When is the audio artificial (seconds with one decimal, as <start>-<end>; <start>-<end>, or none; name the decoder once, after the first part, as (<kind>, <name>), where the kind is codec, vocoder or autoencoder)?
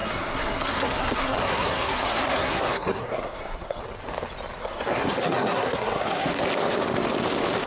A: 0.0-3.8 (codec, SNAC); 4.6-6.4